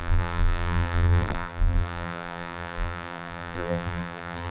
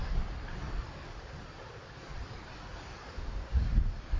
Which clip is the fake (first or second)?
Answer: first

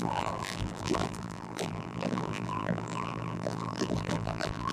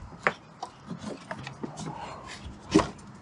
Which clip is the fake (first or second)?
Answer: first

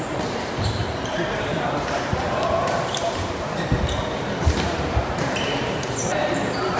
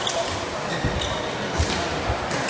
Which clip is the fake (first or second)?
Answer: first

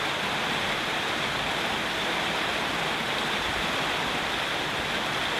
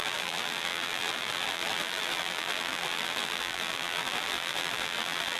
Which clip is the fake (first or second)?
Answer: second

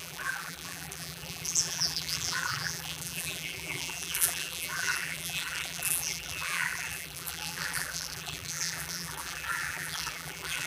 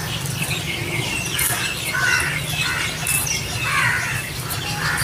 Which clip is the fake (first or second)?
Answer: first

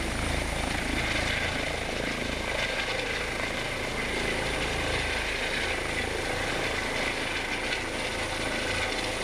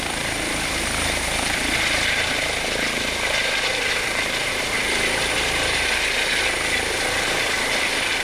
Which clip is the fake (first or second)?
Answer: second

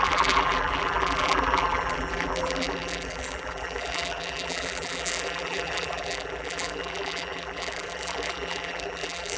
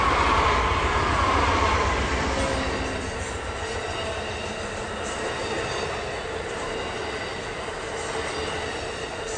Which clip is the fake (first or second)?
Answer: first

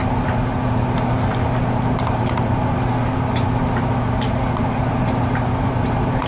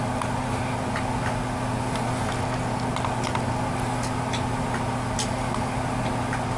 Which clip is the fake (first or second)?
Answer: first